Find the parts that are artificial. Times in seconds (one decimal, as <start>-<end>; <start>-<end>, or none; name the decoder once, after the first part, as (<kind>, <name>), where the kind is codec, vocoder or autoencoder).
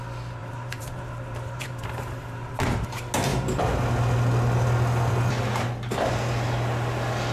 0.4-2.9 (vocoder, BigVGAN v2)